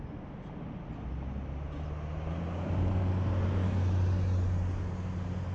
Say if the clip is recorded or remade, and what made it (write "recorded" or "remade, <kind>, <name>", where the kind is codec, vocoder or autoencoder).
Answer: recorded